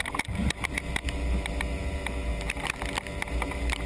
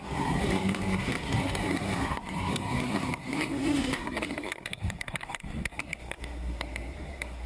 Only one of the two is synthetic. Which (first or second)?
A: second